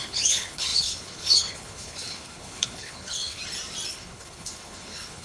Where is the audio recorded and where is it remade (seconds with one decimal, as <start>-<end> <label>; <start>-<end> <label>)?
0.0-3.4 remade; 3.4-3.9 recorded; 3.9-5.2 remade